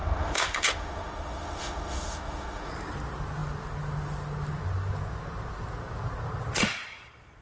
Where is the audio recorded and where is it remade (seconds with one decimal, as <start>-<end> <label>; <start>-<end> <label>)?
0.0-2.7 remade; 2.7-7.4 recorded